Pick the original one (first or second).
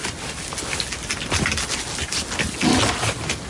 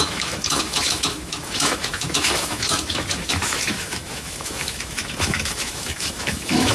first